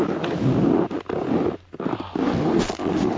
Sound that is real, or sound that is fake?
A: real